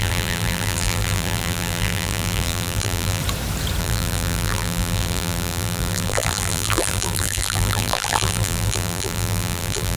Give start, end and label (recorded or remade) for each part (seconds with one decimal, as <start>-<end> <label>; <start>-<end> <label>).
0.0-3.2 remade; 3.2-3.8 recorded; 3.8-10.0 remade